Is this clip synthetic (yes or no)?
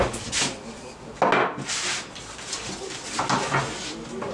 no